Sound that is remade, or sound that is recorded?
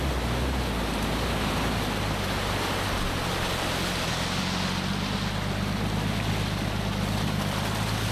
recorded